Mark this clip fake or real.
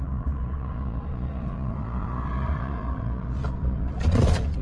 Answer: fake